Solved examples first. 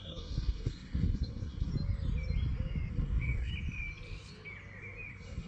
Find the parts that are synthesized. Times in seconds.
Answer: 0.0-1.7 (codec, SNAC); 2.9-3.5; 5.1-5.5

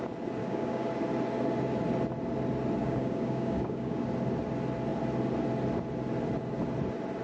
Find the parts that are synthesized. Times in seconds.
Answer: 0.4-0.9 (codec, DAC); 2.8-4.0

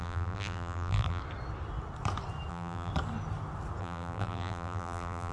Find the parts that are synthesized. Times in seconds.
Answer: 0.0-1.2 (vocoder, BigVGAN v2); 2.5-2.9; 3.8-5.3

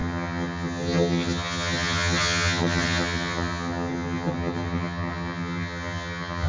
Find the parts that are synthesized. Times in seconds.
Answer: 0.0-6.5 (vocoder, HiFi-GAN)

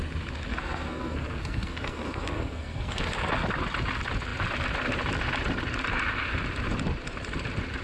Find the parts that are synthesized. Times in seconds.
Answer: 0.5-3.0 (codec, SNAC)

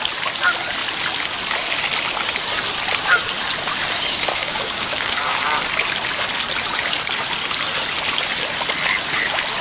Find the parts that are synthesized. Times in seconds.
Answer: 4.3-5.6 (codec, DAC)

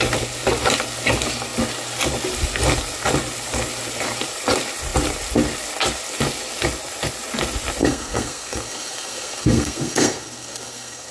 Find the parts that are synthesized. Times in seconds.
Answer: 7.8-11.1 (codec, SNAC)

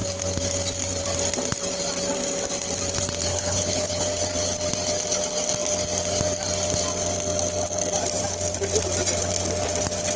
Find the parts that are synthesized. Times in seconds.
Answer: 3.3-4.0 (codec, HILCodec)